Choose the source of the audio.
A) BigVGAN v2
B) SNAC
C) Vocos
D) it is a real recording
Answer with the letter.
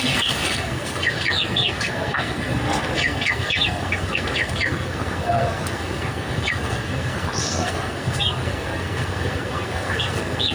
B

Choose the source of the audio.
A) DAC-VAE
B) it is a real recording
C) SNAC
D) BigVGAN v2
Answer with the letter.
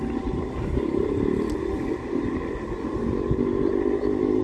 B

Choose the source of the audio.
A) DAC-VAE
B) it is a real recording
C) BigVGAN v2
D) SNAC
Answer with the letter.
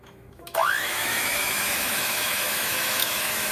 A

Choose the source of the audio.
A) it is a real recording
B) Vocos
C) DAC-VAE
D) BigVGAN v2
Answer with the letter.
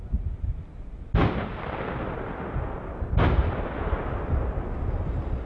A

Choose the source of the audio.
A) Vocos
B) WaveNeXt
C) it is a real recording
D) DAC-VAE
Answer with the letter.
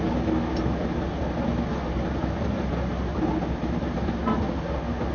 C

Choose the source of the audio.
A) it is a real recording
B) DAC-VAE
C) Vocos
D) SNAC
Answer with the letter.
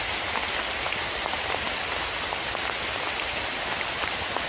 A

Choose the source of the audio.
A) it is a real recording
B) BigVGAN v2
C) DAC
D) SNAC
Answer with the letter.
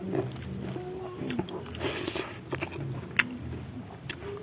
A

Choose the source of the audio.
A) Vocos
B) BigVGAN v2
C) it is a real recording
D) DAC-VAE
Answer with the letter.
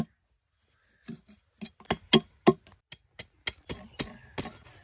C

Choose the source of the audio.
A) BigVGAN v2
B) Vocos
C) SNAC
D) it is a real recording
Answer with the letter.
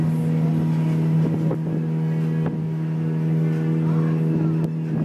D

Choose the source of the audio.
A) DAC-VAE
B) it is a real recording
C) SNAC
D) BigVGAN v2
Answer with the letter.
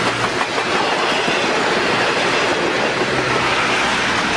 B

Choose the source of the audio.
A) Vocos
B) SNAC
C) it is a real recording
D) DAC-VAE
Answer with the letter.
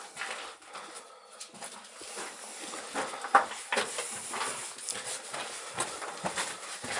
C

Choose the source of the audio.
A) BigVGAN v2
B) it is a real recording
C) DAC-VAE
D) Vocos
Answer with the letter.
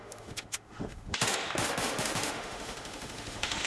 C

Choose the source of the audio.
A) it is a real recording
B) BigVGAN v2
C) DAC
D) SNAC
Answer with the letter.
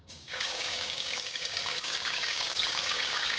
C